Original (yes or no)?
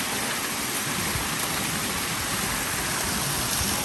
yes